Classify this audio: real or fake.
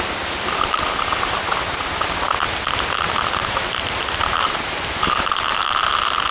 real